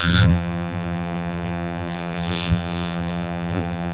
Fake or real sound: fake